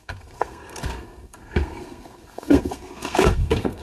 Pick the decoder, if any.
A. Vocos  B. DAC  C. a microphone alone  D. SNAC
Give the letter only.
D